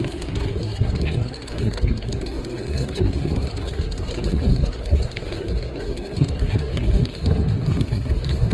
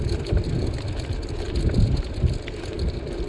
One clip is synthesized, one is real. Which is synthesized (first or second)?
first